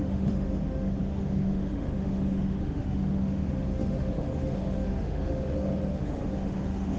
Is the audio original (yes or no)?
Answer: no